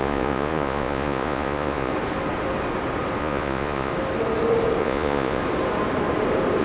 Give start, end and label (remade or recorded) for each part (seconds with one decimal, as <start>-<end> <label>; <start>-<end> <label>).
0.0-1.9 remade; 1.9-3.2 recorded; 3.2-3.9 remade; 3.9-4.8 recorded; 4.8-5.4 remade; 5.4-6.6 recorded